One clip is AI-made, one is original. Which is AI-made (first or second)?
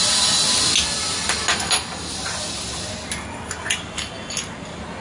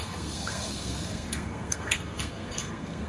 second